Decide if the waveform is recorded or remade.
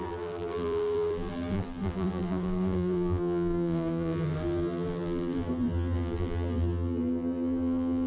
remade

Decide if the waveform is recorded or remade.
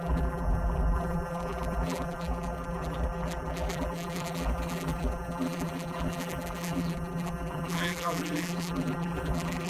remade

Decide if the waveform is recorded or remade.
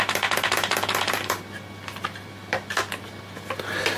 recorded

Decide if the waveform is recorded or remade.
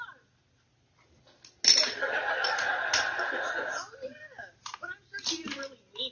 recorded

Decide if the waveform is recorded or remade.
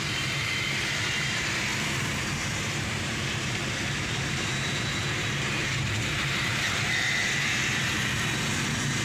remade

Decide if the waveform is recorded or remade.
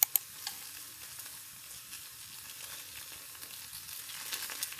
recorded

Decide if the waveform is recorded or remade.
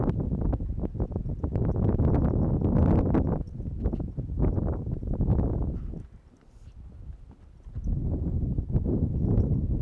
recorded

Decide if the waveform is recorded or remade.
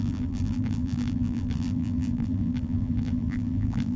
remade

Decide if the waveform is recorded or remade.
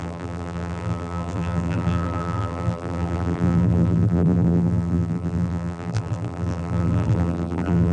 remade